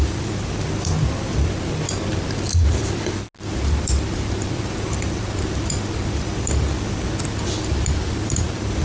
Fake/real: real